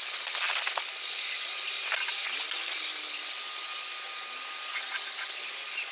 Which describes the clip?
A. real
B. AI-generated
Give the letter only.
A